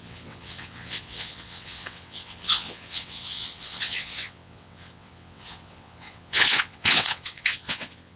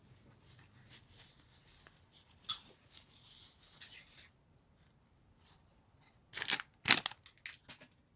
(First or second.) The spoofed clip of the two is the first